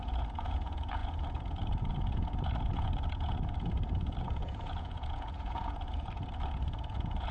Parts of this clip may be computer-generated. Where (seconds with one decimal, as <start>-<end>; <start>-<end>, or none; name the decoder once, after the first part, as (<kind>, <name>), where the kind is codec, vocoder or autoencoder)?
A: 0.0-7.3 (vocoder, Vocos)